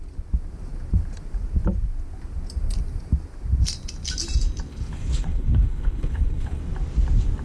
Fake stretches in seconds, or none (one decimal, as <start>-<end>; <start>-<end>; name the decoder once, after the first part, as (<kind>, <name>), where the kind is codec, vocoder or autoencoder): 4.7-6.6 (codec, HILCodec)